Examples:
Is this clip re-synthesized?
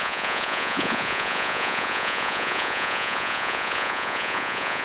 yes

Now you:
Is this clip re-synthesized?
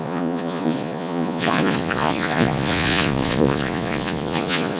yes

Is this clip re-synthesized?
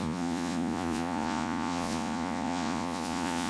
yes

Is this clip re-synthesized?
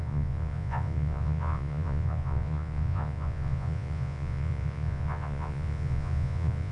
yes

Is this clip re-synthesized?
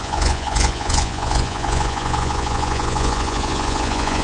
yes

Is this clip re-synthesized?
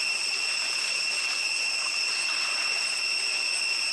no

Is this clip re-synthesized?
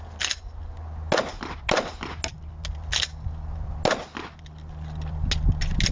no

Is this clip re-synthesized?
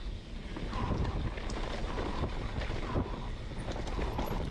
no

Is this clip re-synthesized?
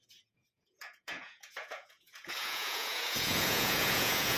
yes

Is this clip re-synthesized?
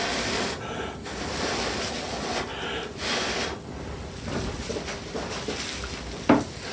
no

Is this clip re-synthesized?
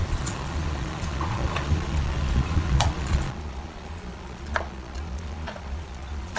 yes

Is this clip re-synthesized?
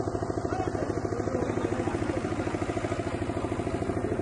no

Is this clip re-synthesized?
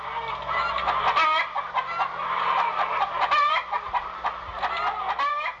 no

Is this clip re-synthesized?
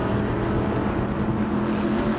no